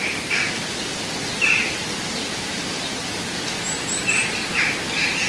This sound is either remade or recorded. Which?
recorded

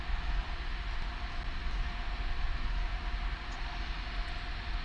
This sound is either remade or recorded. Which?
recorded